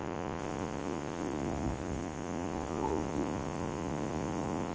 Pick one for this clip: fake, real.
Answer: fake